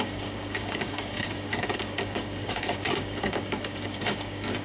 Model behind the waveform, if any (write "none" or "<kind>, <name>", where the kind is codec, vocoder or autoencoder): codec, DAC